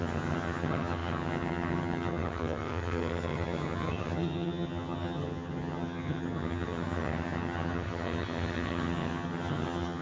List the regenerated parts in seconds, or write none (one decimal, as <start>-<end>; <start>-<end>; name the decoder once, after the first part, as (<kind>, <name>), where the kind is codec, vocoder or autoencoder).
0.0-10.0 (vocoder, HiFi-GAN)